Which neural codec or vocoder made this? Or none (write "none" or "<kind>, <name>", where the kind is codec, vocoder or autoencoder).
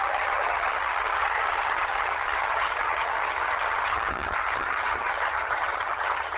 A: vocoder, HiFi-GAN